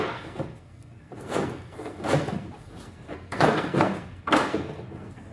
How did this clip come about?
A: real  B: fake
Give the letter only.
B